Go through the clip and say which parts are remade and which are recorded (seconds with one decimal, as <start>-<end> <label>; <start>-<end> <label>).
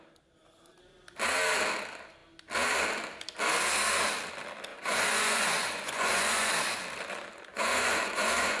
0.0-4.7 recorded; 4.7-6.5 remade; 6.5-7.5 recorded; 7.5-8.6 remade